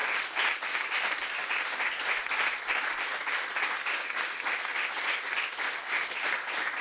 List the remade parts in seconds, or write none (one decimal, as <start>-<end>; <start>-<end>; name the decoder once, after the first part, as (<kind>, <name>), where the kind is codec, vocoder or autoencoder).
none